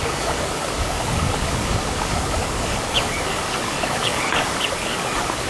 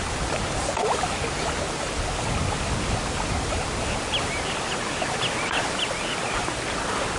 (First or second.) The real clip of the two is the second